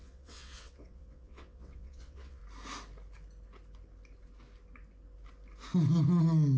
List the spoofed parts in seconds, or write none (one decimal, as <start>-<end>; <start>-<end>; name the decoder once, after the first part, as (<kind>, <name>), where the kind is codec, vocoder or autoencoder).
0.0-2.4 (vocoder, WaveNeXt)